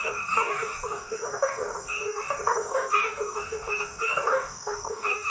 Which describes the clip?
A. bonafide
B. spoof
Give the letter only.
B